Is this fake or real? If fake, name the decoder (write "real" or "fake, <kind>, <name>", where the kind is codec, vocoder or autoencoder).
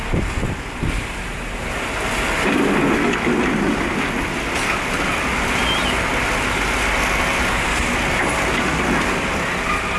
real